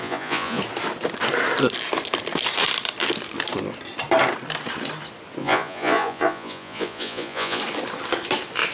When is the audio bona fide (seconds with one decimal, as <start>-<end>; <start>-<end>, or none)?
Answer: 0.6-5.4; 7.6-8.7